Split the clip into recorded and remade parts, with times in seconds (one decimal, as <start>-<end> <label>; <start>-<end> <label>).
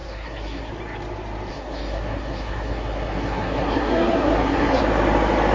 0.0-0.7 remade; 0.7-1.5 recorded; 1.5-4.8 remade; 4.8-5.5 recorded